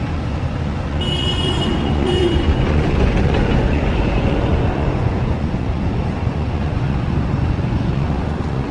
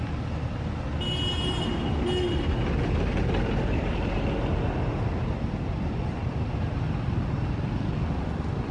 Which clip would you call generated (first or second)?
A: first